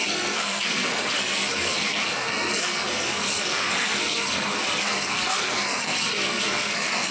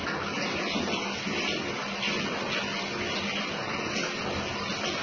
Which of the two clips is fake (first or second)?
first